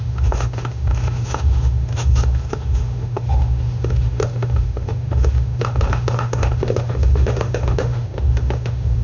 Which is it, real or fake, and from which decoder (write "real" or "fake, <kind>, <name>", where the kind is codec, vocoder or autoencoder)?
fake, autoencoder, DAC-VAE